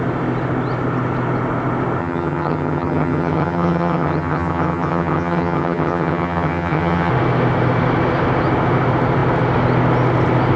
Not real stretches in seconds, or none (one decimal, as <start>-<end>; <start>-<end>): 2.0-7.1